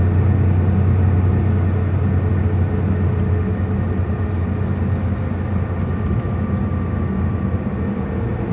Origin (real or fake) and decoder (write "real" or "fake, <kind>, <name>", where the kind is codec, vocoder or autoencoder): real